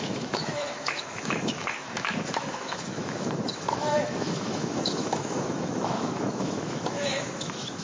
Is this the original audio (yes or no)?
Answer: no